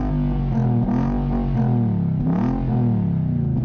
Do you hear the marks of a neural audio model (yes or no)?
no